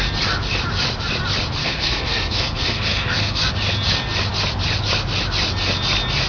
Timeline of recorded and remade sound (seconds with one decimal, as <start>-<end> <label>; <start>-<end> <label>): 0.0-1.6 recorded; 1.6-3.5 remade; 3.5-6.3 recorded